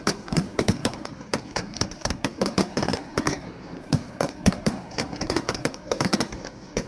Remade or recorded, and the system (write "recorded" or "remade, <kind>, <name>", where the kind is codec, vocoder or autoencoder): remade, codec, SNAC